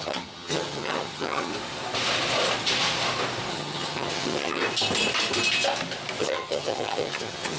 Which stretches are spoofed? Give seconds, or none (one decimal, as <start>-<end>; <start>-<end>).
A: 0.0-1.5; 3.5-4.6; 6.2-7.6